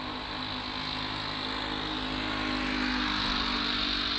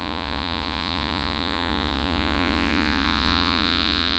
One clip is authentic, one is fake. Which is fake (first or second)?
second